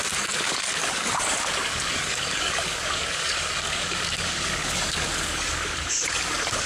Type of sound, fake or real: fake